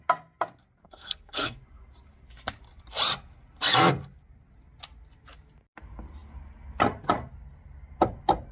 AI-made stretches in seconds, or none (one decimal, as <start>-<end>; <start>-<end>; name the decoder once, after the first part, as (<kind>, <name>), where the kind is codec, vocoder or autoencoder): 0.8-1.6 (codec, SNAC)